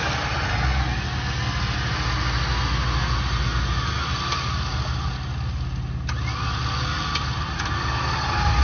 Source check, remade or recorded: recorded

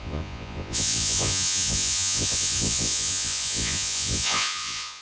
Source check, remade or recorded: remade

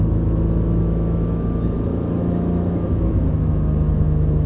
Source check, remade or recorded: remade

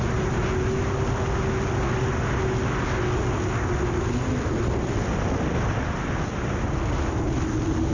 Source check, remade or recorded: recorded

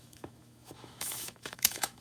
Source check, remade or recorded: remade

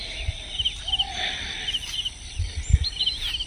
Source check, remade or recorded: recorded